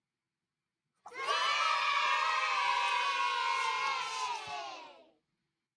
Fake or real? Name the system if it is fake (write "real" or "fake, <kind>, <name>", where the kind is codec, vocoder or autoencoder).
real